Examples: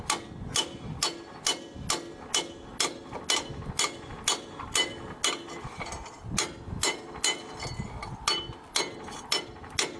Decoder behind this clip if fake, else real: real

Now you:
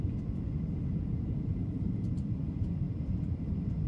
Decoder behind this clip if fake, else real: real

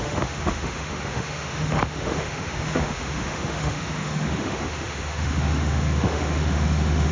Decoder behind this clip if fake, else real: fake, autoencoder, DAC-VAE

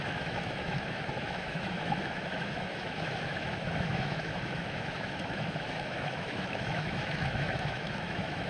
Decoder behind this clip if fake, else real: fake, autoencoder, DAC-VAE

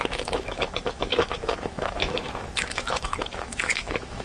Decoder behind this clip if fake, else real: fake, autoencoder, DAC-VAE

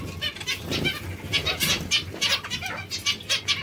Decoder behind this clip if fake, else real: real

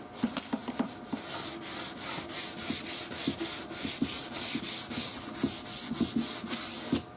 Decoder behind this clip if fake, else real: real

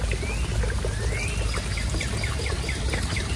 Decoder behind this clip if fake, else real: real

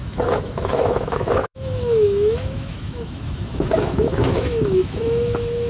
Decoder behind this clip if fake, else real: fake, autoencoder, DAC-VAE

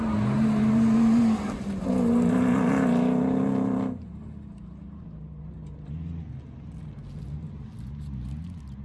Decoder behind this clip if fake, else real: real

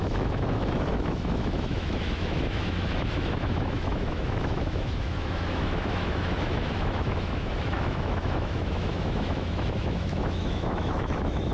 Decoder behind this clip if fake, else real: fake, autoencoder, DAC-VAE